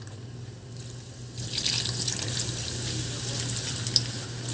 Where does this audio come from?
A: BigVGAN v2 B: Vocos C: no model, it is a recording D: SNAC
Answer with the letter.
C